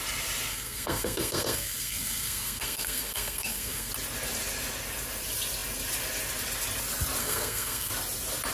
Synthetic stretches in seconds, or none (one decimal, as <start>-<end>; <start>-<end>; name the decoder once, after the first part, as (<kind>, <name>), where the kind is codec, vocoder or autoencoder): 0.5-3.9 (codec, SNAC); 7.2-7.9

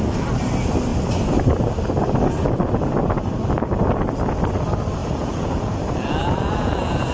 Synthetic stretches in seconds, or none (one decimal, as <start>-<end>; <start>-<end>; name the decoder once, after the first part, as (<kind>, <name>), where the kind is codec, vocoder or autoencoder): 5.0-5.8 (vocoder, Vocos); 6.2-7.1

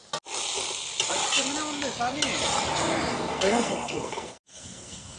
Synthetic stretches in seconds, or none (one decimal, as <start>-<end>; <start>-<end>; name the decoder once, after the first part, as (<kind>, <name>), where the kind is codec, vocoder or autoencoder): 3.1-5.2 (codec, SNAC)

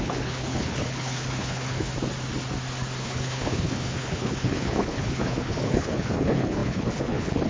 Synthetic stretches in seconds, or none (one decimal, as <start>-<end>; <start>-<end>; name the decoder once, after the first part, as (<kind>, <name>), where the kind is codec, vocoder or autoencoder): 0.0-1.9 (codec, HILCodec); 3.0-7.5

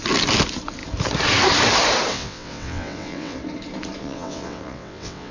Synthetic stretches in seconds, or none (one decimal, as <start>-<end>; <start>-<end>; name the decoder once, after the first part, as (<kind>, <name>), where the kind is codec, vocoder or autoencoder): 2.1-3.4 (vocoder, WaveNeXt); 4.0-5.3

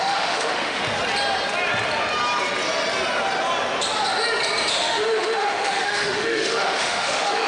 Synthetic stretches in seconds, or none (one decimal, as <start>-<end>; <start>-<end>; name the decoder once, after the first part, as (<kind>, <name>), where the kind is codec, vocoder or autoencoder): 0.0-0.8 (autoencoder, DAC-VAE); 4.7-7.5

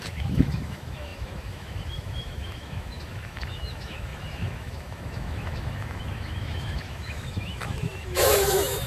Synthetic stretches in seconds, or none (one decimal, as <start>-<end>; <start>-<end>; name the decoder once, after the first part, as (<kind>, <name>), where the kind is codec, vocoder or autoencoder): 0.0-8.9 (autoencoder, DAC-VAE)

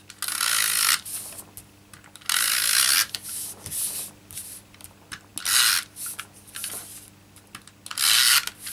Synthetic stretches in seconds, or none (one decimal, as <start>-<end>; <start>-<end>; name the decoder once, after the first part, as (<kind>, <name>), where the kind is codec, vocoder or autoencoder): none